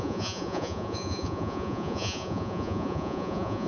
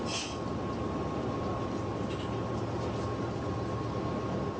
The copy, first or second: first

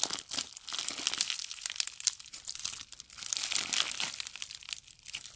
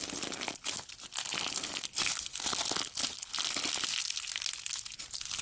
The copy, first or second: first